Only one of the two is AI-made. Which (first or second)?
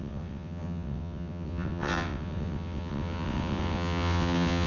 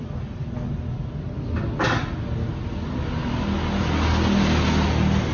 first